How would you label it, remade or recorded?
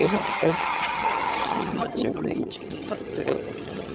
remade